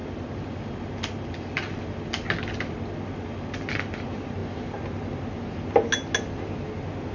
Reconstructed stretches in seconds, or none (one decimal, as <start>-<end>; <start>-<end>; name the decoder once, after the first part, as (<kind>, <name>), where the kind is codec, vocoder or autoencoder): none